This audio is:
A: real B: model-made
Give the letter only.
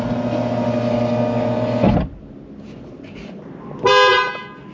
A